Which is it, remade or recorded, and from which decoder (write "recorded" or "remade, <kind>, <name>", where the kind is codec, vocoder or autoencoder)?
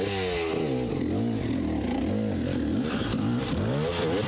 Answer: recorded